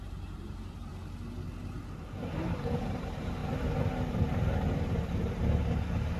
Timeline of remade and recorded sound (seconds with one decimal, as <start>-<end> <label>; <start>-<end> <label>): 0.0-0.9 remade; 0.9-2.4 recorded; 2.4-3.4 remade; 3.4-4.1 recorded; 4.1-6.2 remade